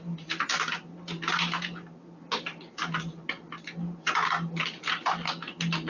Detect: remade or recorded recorded